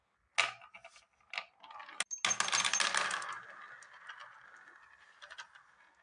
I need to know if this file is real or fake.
real